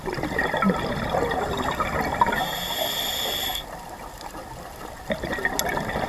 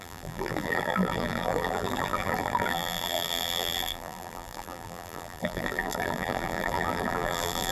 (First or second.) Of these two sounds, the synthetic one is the second